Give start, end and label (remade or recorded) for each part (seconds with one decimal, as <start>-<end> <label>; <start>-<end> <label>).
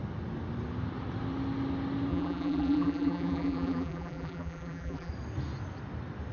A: 0.0-2.1 recorded; 2.1-5.1 remade; 5.1-6.3 recorded